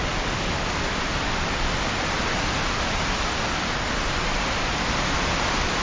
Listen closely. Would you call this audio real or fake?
real